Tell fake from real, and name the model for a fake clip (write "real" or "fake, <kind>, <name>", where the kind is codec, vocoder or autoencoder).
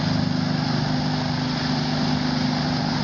real